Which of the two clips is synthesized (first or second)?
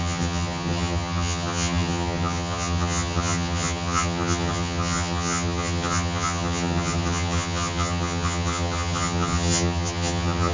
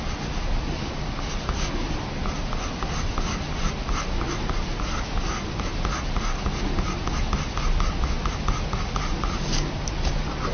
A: first